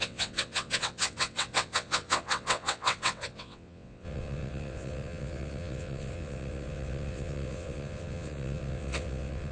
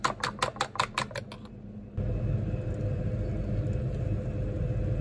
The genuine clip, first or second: second